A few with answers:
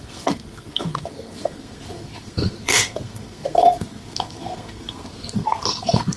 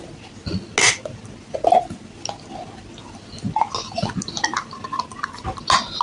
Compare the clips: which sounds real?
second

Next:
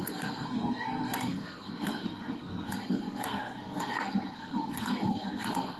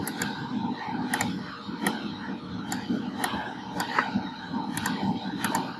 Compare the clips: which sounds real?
second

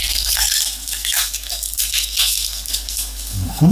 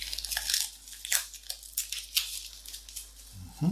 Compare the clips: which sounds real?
second